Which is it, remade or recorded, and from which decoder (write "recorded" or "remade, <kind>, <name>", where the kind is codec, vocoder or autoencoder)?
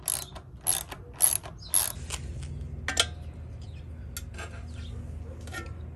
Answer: recorded